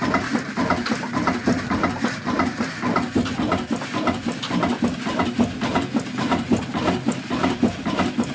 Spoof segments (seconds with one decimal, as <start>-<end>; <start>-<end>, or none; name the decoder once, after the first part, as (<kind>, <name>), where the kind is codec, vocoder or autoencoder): none